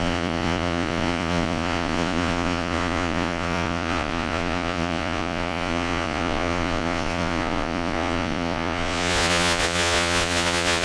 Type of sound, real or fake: fake